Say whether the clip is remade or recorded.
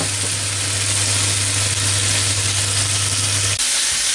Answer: recorded